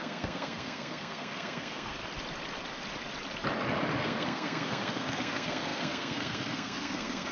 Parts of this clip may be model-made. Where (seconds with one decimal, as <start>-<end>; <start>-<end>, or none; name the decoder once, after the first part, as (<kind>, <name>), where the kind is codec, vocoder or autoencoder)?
0.0-2.0 (codec, SNAC); 4.0-7.3